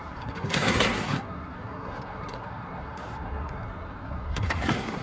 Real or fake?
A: fake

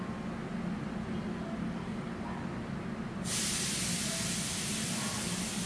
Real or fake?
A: real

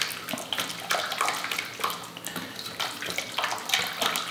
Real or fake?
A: real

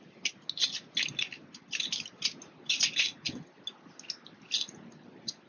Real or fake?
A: real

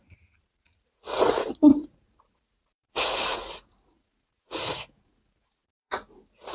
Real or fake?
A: fake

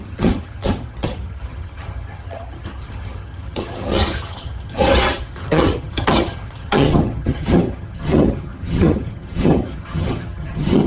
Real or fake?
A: fake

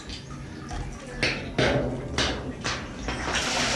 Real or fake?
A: real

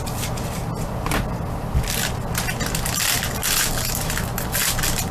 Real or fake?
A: real